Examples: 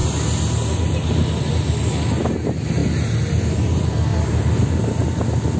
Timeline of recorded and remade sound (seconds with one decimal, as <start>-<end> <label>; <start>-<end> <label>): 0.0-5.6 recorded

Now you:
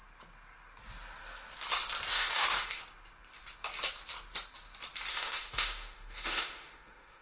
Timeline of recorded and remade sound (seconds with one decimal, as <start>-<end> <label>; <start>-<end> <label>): 0.0-2.1 recorded; 2.1-2.8 remade; 2.8-5.1 recorded; 5.1-7.2 remade

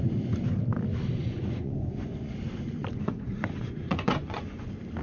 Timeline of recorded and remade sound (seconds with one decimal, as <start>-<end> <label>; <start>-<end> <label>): 0.0-1.2 recorded; 1.2-2.3 remade; 2.3-2.8 recorded; 2.8-4.6 remade; 4.6-5.0 recorded

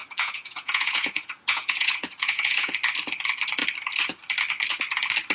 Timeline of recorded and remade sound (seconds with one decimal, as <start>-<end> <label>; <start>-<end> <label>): 0.0-2.7 remade; 2.7-5.3 recorded

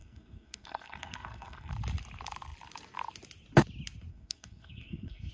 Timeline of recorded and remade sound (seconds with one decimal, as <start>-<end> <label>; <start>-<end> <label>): 0.0-1.7 remade; 1.7-4.1 recorded; 4.1-5.3 remade